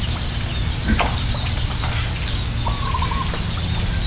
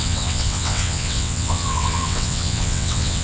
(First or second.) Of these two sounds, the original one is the first